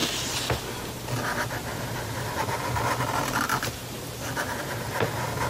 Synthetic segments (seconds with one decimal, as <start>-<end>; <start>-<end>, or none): none